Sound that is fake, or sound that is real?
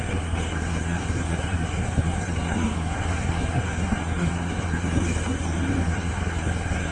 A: fake